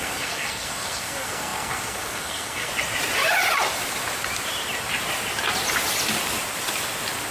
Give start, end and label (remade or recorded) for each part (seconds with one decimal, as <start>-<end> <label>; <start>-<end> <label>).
0.0-2.7 remade; 2.7-7.3 recorded